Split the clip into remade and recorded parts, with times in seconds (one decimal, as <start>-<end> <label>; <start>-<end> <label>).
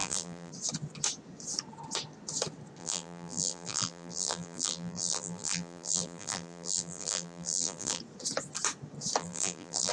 0.0-0.5 remade; 0.5-2.8 recorded; 2.8-8.0 remade; 8.0-9.2 recorded; 9.2-9.9 remade